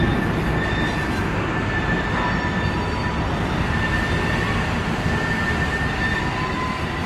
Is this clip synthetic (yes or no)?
no